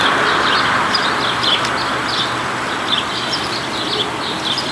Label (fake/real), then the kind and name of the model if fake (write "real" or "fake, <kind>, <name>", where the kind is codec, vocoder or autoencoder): real